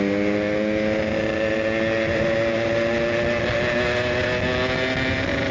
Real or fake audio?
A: real